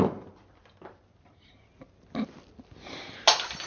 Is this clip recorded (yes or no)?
yes